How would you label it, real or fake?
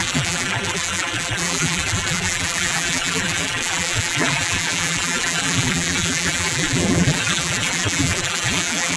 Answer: fake